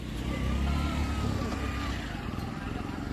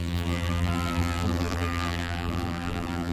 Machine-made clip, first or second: second